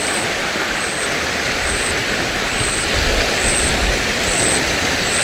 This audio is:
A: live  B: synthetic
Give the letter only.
A